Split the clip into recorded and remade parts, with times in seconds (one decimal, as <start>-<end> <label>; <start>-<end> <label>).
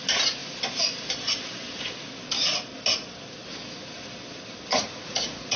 0.0-4.7 recorded; 4.7-5.6 remade